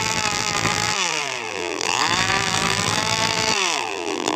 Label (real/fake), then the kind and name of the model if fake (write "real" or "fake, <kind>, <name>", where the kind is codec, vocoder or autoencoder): fake, vocoder, BigVGAN v2